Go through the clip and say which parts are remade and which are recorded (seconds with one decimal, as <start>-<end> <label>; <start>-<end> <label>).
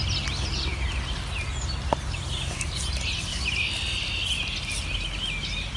0.0-5.8 recorded